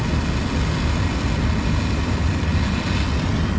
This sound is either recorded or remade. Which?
recorded